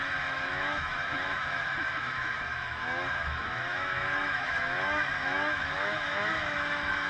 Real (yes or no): no